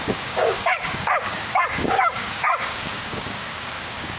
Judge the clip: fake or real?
fake